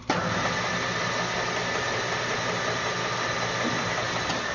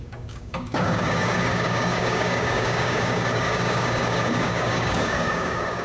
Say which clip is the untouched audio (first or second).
first